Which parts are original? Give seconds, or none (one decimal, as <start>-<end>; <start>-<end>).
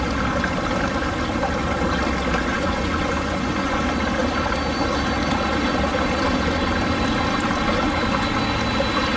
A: 0.0-2.5; 3.8-9.2